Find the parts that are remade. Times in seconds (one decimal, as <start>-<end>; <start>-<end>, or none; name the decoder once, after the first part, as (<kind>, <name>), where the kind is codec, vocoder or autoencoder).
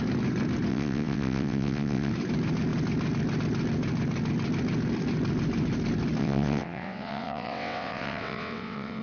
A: 0.7-2.1 (vocoder, WaveNeXt); 6.2-9.0